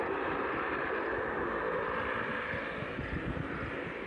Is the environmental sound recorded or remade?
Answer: recorded